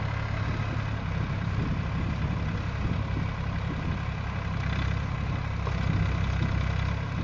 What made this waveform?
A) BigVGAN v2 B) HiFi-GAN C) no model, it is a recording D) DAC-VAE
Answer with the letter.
C